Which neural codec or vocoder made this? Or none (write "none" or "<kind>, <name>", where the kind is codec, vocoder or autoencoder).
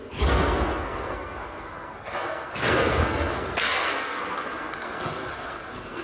codec, SNAC